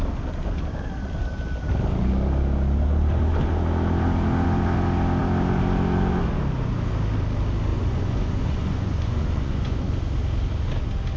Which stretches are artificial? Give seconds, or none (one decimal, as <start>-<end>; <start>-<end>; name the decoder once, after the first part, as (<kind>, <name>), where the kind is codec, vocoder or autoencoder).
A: 7.7-9.9 (vocoder, Vocos)